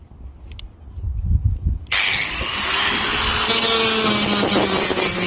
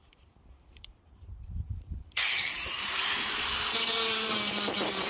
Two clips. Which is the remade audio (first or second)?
second